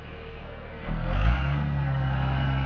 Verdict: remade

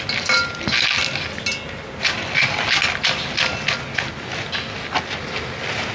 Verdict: recorded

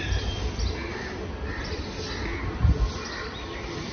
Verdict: recorded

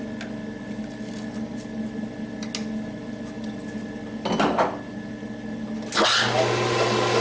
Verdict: recorded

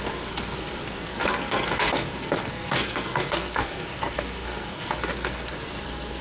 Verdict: remade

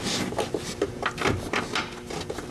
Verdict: recorded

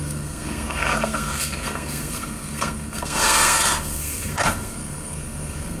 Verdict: remade